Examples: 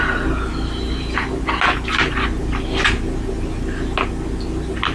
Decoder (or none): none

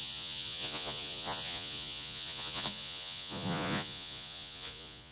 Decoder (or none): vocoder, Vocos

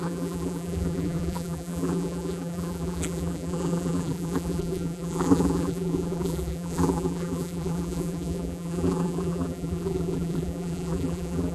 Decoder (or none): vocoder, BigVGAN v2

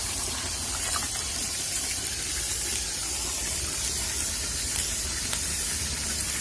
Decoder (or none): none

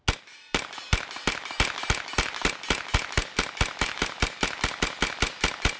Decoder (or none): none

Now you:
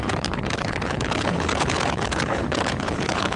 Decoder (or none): codec, HILCodec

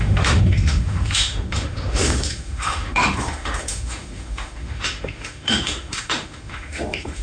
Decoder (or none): autoencoder, DAC-VAE